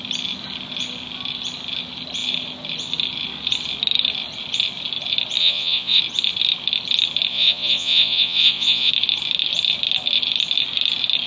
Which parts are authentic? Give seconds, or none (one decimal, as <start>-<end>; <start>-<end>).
0.0-5.4; 6.0-7.3; 8.9-11.3